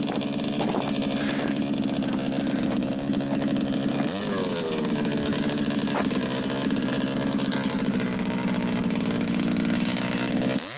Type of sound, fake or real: real